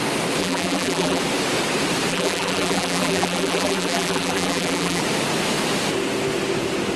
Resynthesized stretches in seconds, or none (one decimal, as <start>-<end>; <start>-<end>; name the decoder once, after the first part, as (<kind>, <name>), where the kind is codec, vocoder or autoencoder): 0.4-1.2 (vocoder, BigVGAN v2); 2.1-5.0